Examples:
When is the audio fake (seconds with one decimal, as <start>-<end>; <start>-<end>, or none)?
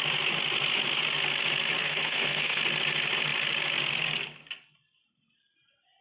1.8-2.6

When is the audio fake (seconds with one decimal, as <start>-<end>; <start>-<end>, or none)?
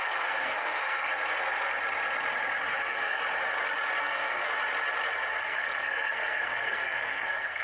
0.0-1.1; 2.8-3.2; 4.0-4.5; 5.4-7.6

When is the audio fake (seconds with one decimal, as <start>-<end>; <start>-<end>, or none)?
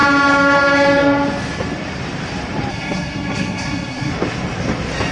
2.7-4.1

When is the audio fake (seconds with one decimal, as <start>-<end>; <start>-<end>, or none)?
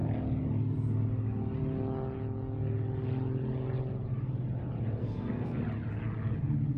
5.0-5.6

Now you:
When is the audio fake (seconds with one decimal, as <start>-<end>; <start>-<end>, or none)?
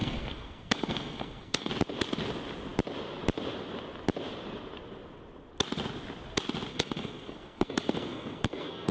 0.0-1.7; 6.7-8.9